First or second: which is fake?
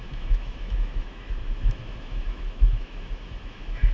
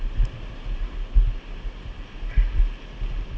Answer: first